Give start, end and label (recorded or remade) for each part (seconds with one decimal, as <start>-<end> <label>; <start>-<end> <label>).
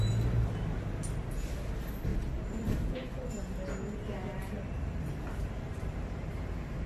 0.0-2.1 recorded; 2.1-3.3 remade; 3.3-4.4 recorded; 4.4-6.9 remade